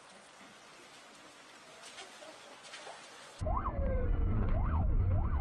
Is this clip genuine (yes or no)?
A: no